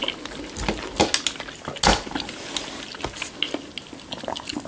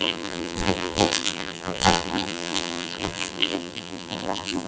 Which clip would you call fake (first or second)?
second